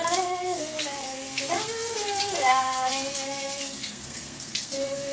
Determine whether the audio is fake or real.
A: fake